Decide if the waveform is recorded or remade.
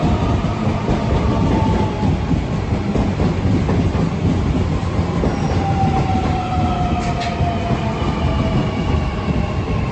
recorded